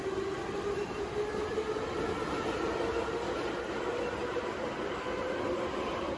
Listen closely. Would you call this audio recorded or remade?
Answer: recorded